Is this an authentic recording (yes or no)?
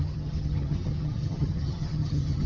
no